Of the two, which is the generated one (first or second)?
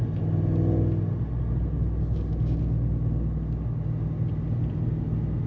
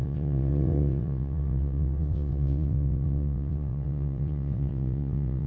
second